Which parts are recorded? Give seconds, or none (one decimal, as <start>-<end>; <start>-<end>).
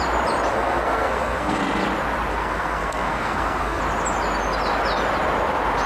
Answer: 0.0-0.5; 1.6-2.3; 3.8-5.9